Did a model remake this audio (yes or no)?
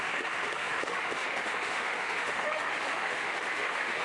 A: yes